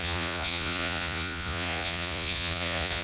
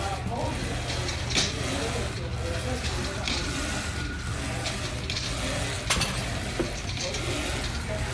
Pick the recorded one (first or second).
second